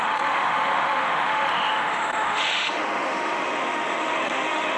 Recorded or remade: remade